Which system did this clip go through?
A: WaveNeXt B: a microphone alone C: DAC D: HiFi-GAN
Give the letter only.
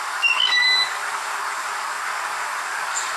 C